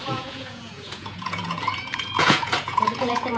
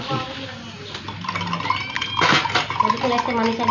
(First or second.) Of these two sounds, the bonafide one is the second